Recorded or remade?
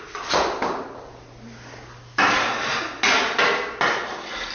recorded